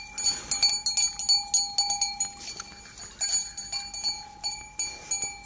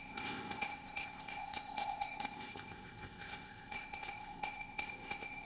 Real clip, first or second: first